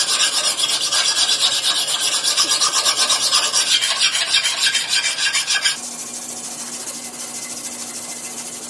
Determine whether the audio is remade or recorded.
recorded